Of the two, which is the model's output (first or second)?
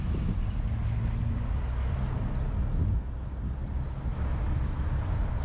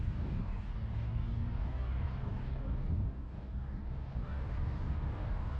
second